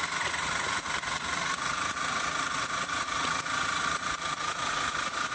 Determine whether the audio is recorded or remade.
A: remade